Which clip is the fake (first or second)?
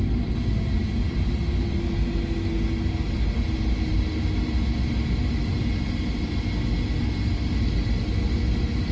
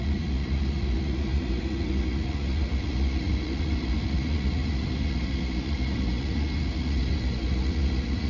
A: second